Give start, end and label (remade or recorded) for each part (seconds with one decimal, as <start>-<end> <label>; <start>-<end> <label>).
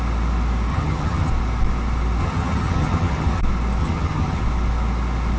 0.0-0.7 recorded; 0.7-1.3 remade; 1.3-2.2 recorded; 2.2-3.4 remade; 3.4-3.8 recorded; 3.8-4.4 remade; 4.4-5.4 recorded